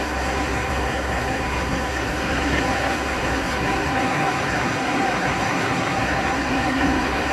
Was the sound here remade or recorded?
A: remade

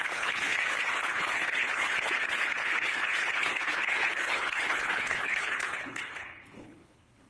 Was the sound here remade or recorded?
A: remade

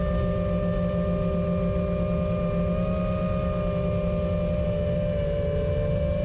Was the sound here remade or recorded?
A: recorded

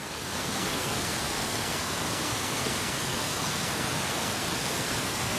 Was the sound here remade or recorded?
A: remade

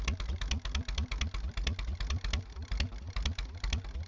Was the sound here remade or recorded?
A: recorded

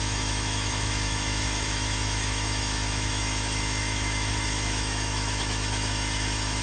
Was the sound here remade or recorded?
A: remade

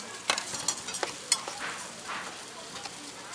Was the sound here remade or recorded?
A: recorded